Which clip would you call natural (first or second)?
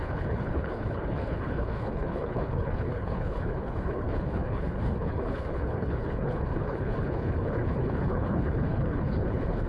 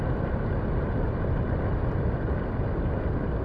second